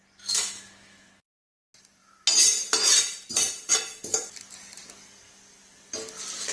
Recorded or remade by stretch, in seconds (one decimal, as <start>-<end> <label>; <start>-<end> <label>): 0.0-0.4 recorded; 0.4-1.6 remade; 1.6-6.5 recorded